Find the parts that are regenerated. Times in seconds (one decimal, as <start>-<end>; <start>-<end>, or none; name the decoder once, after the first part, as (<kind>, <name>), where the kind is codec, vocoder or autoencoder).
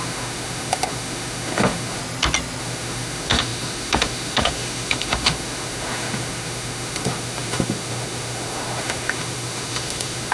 0.0-2.0 (autoencoder, DAC-VAE); 2.6-10.3